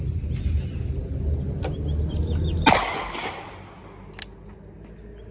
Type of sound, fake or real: real